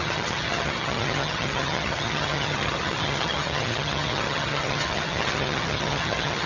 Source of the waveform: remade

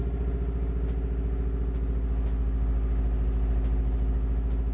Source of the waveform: recorded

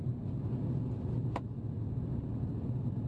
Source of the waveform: recorded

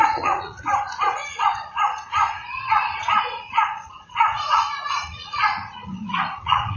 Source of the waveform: remade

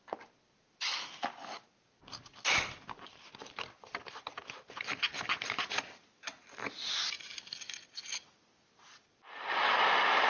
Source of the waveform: recorded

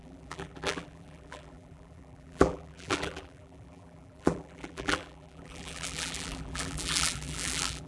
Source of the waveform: remade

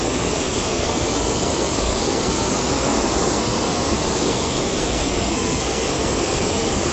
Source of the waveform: remade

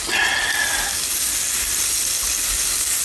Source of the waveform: recorded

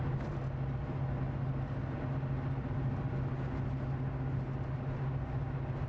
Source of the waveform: recorded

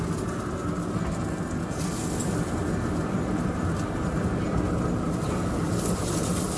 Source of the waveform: recorded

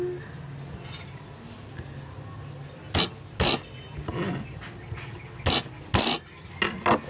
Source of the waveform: recorded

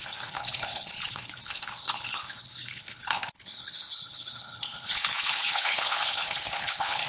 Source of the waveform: remade